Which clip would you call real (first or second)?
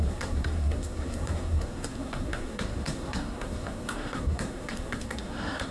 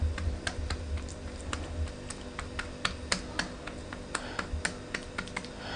second